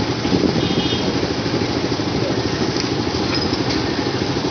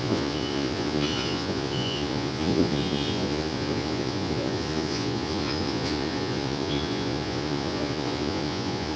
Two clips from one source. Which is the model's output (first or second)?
second